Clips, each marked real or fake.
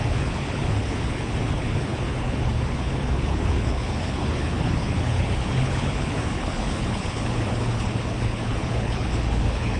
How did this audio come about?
fake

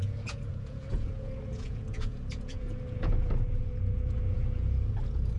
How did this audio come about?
fake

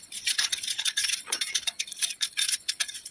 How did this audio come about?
fake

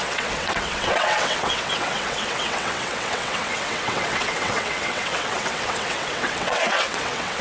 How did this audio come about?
fake